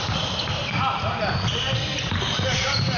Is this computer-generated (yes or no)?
no